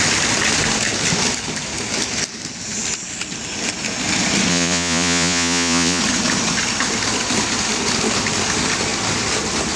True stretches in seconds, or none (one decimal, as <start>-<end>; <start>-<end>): 0.0-4.5; 6.0-9.8